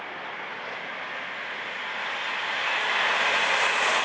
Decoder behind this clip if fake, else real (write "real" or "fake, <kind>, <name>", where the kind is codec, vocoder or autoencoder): real